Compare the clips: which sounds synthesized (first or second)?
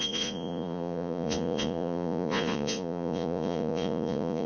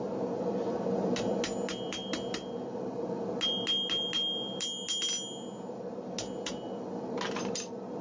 first